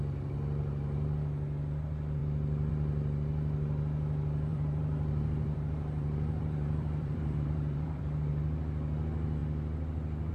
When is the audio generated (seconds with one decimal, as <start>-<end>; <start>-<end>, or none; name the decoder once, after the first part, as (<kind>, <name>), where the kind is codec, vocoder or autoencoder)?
4.5-8.3 (vocoder, BigVGAN v2)